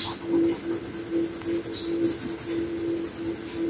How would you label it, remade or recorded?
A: recorded